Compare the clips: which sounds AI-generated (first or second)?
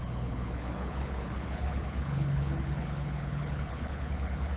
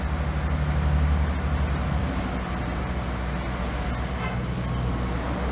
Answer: first